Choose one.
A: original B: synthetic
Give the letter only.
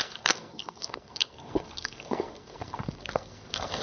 B